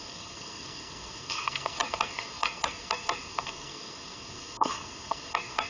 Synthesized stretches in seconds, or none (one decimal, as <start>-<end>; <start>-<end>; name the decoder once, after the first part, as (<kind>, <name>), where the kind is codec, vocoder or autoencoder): 0.0-5.7 (codec, SNAC)